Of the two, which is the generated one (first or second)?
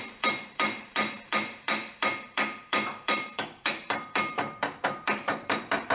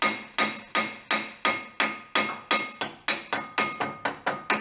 first